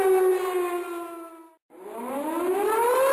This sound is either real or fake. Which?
real